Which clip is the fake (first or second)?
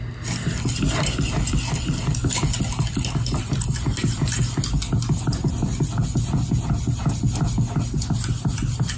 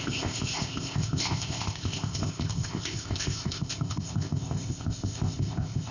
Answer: second